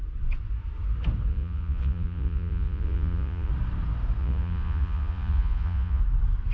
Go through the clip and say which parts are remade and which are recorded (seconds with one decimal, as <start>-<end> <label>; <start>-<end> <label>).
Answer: 0.0-1.3 recorded; 1.3-3.5 remade; 3.5-4.2 recorded; 4.2-6.0 remade; 6.0-6.5 recorded